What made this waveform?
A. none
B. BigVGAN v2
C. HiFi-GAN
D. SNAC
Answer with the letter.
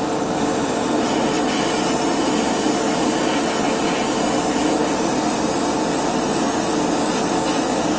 A